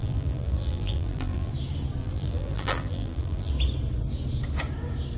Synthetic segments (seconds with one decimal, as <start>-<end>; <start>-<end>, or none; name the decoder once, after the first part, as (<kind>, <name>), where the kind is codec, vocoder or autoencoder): 0.0-1.5 (vocoder, BigVGAN v2); 2.0-3.5